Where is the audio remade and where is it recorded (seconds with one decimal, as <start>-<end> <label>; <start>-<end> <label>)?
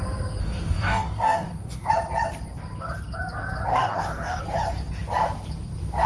0.0-0.4 recorded; 0.4-1.9 remade; 1.9-3.7 recorded; 3.7-4.4 remade; 4.4-6.1 recorded